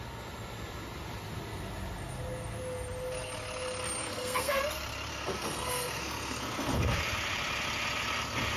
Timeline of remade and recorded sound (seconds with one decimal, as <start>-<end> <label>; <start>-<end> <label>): 0.0-4.0 recorded; 4.0-4.6 remade; 4.6-5.1 recorded; 5.1-7.0 remade; 7.0-8.6 recorded